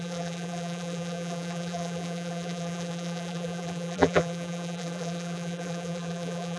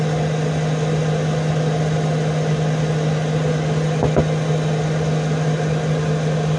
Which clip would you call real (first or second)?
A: second